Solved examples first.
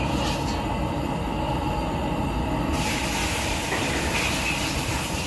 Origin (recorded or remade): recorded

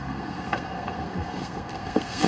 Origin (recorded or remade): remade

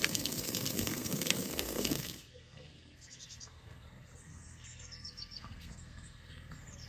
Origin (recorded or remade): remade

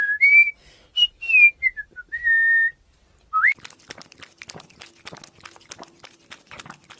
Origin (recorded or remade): recorded